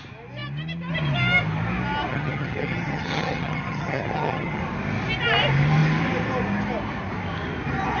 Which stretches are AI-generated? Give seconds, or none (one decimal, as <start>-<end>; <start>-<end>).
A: 2.1-4.6